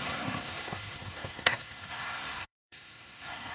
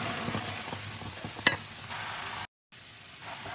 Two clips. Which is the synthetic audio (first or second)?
first